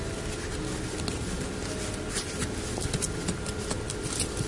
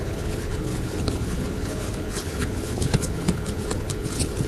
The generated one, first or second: second